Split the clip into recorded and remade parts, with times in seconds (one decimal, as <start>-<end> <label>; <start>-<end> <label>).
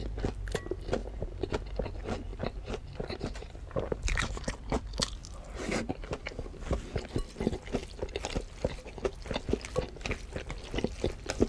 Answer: 0.0-1.0 recorded; 1.0-1.5 remade; 1.5-2.3 recorded; 2.3-4.3 remade; 4.3-11.5 recorded